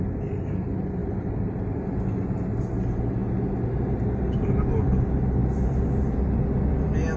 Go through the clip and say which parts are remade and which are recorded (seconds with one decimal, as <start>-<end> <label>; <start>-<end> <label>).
0.0-7.2 recorded